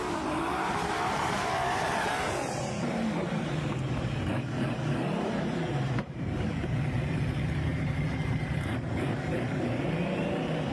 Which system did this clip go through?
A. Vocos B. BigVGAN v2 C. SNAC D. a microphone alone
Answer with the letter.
B